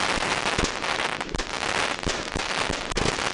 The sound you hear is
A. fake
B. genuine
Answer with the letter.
B